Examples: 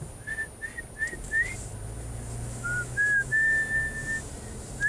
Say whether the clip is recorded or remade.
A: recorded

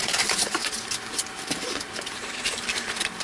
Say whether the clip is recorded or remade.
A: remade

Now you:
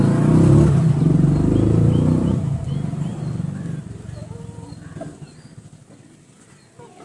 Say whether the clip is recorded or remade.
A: recorded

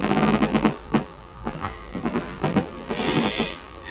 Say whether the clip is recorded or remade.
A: remade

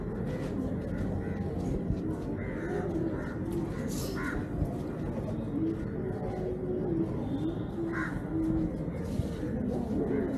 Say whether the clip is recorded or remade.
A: recorded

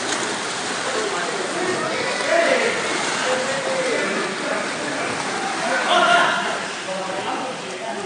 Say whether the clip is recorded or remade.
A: recorded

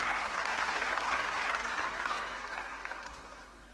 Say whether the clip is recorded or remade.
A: remade